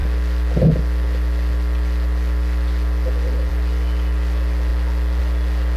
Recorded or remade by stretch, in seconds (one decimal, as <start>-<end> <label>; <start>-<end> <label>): 0.0-5.8 recorded